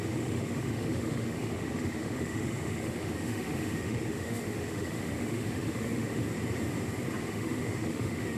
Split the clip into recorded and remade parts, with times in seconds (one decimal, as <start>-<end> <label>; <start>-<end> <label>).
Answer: 0.0-6.2 remade; 6.2-7.3 recorded; 7.3-8.4 remade